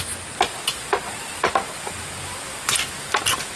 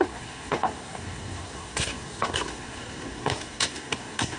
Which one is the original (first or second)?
first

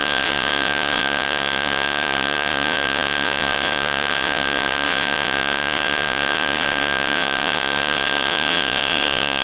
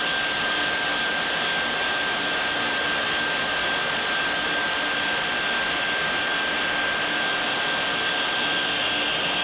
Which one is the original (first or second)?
second